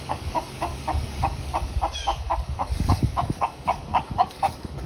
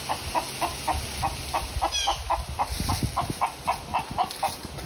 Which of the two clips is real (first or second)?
second